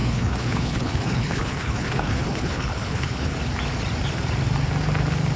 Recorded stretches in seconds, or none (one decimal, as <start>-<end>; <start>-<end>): 3.3-5.4